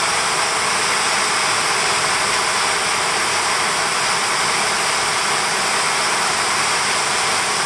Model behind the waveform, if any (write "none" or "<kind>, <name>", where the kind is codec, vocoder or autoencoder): none